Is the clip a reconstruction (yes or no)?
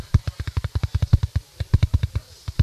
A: no